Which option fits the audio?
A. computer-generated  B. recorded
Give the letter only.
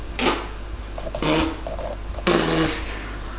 B